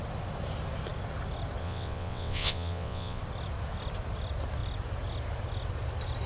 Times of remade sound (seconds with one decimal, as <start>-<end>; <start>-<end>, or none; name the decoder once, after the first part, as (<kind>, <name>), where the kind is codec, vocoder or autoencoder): 1.6-3.2 (vocoder, WaveNeXt)